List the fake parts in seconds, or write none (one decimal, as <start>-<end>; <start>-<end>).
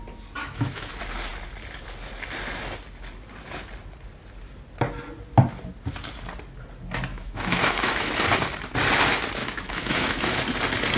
0.4-0.9; 7.1-8.2; 9.4-10.4